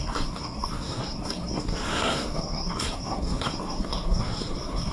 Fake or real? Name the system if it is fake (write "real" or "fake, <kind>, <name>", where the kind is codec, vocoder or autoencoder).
fake, codec, SNAC